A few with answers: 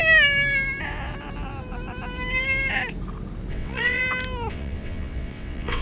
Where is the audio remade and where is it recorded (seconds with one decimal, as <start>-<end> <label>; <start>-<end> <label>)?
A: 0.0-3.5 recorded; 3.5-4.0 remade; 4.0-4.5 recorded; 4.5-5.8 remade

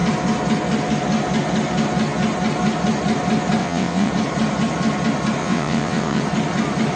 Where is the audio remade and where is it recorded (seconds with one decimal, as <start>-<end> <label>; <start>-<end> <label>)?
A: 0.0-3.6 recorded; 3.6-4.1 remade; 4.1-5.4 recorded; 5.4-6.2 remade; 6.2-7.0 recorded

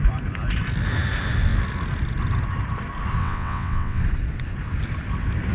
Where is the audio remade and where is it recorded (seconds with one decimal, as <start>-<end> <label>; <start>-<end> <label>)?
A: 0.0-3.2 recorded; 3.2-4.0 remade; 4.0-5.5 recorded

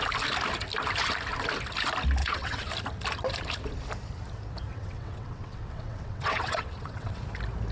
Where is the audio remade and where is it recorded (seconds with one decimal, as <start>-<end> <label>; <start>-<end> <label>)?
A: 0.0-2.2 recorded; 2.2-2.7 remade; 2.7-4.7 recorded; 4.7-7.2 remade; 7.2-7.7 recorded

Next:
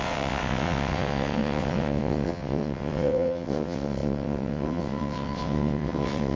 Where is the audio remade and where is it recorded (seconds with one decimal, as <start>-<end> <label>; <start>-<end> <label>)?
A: 0.0-6.4 remade

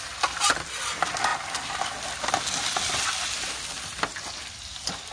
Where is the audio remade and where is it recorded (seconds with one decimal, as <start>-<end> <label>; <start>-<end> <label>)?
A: 0.0-5.1 recorded

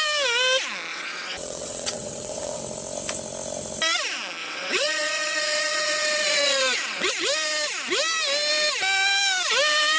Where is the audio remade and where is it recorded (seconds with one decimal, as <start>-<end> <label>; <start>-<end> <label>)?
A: 0.0-0.9 recorded; 0.9-2.6 remade; 2.6-4.4 recorded; 4.4-7.1 remade; 7.1-10.0 recorded